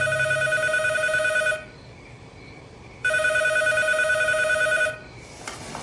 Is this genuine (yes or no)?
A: yes